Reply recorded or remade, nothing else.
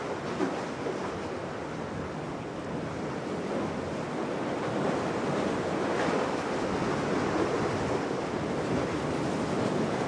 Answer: recorded